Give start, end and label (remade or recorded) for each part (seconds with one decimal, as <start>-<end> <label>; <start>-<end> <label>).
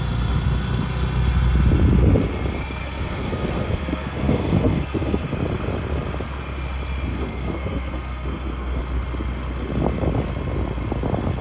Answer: 0.0-2.8 recorded; 2.8-5.3 remade; 5.3-7.1 recorded; 7.1-8.8 remade; 8.8-11.4 recorded